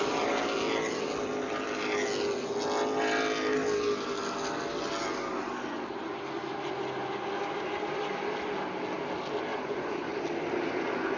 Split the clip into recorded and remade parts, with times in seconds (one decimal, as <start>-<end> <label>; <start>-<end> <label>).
0.0-9.5 recorded; 9.5-10.1 remade; 10.1-11.2 recorded